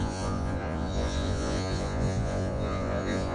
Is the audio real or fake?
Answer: fake